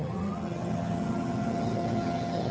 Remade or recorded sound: remade